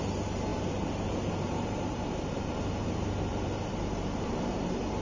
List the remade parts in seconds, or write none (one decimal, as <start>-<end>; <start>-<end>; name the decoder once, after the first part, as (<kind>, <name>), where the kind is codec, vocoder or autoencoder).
0.0-0.5 (vocoder, BigVGAN v2); 1.5-5.0